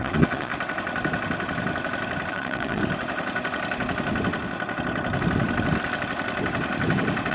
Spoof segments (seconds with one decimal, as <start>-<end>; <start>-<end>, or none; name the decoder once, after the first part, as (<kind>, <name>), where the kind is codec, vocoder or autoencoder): 0.0-0.5 (vocoder, Vocos); 2.3-2.8